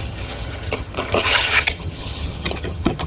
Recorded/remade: remade